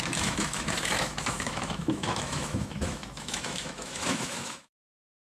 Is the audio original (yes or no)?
no